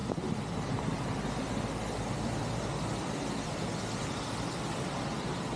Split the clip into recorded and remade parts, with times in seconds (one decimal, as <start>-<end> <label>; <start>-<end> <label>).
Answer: 0.0-5.6 recorded